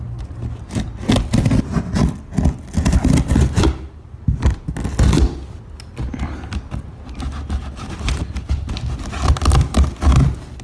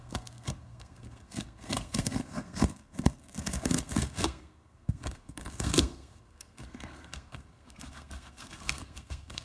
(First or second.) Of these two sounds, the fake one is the second